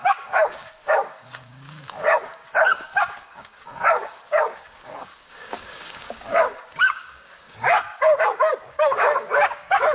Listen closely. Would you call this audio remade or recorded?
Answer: remade